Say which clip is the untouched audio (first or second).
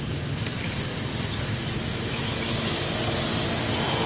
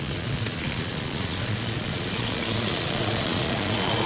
first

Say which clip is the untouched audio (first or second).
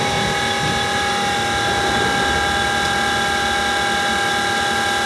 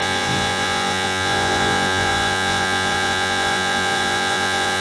first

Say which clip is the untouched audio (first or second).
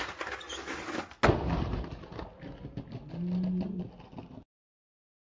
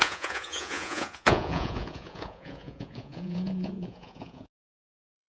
first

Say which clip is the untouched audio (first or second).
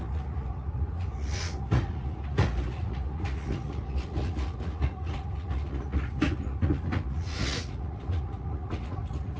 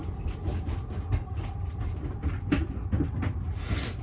second